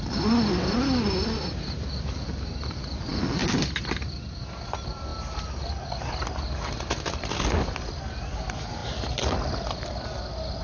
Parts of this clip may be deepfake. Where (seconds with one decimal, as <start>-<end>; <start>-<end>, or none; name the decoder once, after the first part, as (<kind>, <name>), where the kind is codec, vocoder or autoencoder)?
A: none